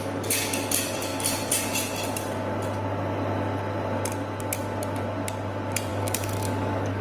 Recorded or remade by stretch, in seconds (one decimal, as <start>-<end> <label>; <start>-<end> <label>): 0.0-5.9 recorded; 5.9-7.0 remade